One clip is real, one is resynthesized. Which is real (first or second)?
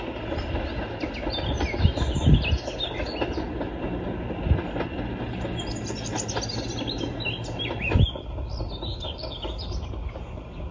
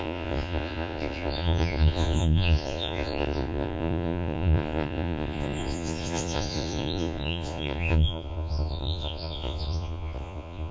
first